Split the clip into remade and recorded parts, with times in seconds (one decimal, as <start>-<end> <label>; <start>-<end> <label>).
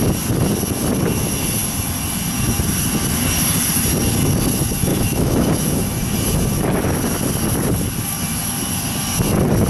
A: 0.0-4.9 recorded; 4.9-5.5 remade; 5.5-9.7 recorded